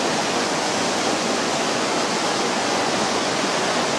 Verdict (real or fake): fake